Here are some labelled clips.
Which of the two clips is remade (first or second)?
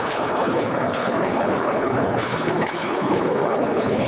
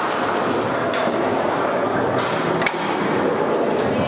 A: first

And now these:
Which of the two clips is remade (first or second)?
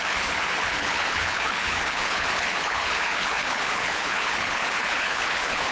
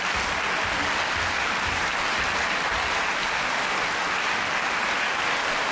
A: first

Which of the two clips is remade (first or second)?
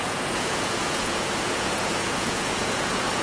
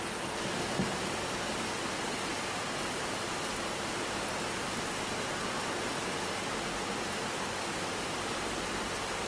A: first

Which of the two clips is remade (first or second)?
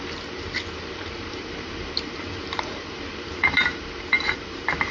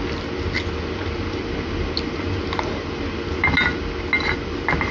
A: first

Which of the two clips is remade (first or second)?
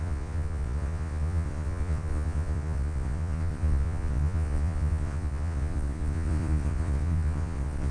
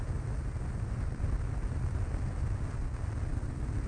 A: first